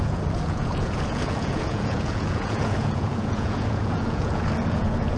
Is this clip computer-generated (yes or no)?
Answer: yes